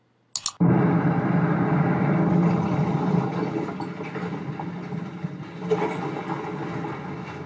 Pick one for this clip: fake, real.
real